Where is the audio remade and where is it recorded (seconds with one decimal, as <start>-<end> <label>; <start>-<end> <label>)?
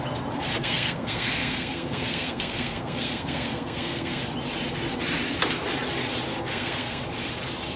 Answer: 0.0-0.6 recorded; 0.6-4.2 remade; 4.2-6.5 recorded; 6.5-7.0 remade; 7.0-7.8 recorded